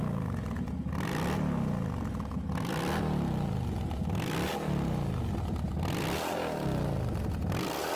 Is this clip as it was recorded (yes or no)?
yes